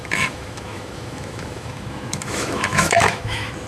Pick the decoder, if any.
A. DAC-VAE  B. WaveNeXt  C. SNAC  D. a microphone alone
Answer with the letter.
A